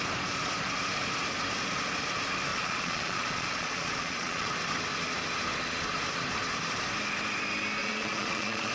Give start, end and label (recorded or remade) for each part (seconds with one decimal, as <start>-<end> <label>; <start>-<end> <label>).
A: 0.0-2.5 recorded; 2.5-4.5 remade; 4.5-7.8 recorded; 7.8-8.7 remade